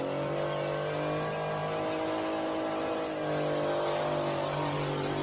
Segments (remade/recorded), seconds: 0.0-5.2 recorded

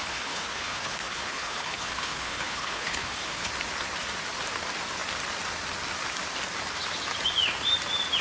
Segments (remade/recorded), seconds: 0.0-3.5 remade; 3.5-8.2 recorded

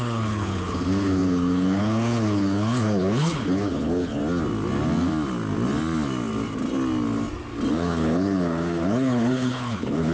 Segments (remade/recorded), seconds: 0.0-4.2 remade; 4.2-7.7 recorded; 7.7-10.1 remade